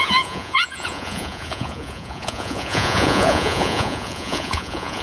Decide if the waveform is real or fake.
fake